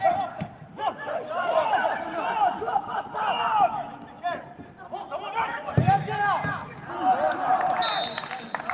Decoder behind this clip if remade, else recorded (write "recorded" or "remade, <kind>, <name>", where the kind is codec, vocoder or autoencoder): recorded